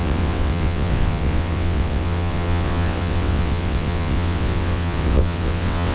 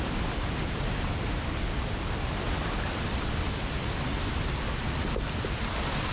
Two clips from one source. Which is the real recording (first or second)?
second